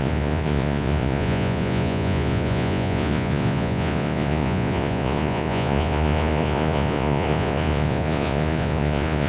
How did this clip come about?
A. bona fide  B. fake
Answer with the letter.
B